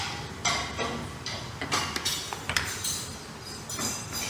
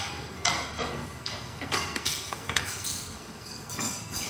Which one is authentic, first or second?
first